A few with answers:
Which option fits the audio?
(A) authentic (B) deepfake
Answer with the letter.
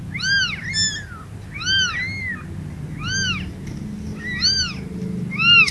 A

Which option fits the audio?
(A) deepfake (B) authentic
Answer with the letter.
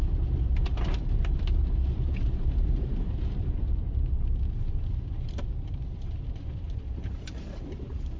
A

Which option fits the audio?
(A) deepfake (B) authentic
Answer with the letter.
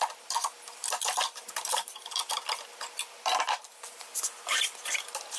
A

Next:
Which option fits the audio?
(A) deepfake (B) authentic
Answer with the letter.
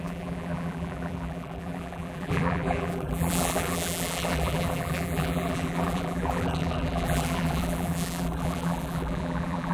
A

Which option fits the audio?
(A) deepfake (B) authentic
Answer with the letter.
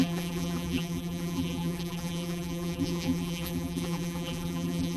A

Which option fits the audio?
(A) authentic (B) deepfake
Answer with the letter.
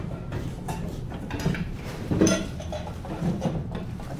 B